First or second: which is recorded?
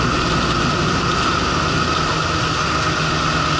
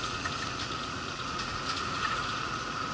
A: first